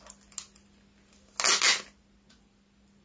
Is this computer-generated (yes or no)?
no